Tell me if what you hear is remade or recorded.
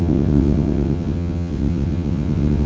remade